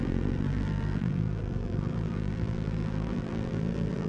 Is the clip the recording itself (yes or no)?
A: no